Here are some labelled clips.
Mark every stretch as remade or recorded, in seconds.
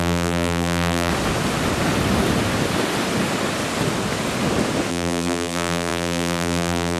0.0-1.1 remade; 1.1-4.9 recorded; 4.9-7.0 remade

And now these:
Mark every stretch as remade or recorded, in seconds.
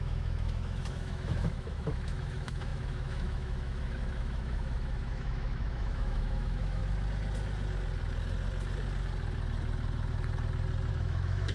0.0-6.8 remade; 6.8-10.9 recorded; 10.9-11.5 remade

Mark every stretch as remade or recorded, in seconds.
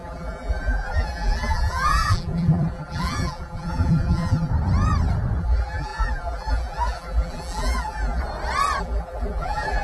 0.0-4.5 remade; 4.5-5.4 recorded; 5.4-8.2 remade; 8.2-8.8 recorded; 8.8-9.8 remade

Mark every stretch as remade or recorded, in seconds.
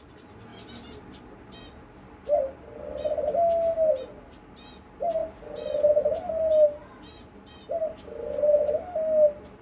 0.0-9.6 recorded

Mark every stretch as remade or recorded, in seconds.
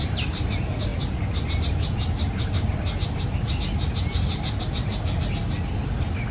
0.0-6.3 recorded